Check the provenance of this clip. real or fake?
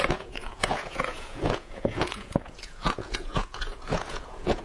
fake